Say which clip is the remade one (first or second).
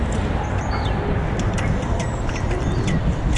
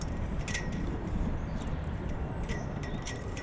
second